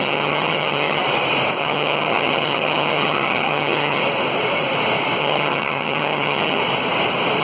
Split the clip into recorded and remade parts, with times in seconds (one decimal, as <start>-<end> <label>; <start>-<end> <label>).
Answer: 0.0-1.0 remade; 1.0-1.6 recorded; 1.6-4.0 remade; 4.0-5.2 recorded; 5.2-6.6 remade; 6.6-7.4 recorded